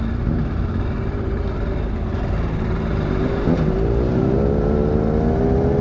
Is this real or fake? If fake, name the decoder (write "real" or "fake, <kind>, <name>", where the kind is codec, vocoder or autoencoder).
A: real